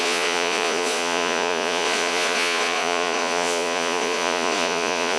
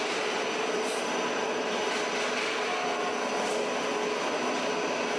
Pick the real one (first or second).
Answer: second